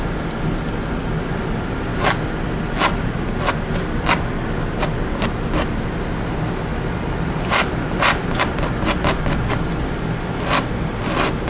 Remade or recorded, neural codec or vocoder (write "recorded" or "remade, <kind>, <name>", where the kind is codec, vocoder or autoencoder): recorded